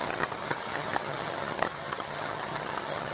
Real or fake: fake